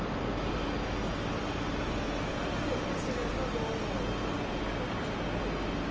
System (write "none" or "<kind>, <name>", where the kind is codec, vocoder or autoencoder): none